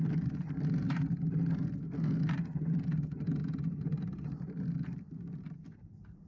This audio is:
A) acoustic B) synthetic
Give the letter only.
A